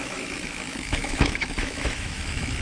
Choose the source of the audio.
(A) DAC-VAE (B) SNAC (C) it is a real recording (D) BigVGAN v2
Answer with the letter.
A